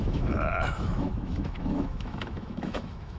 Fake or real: fake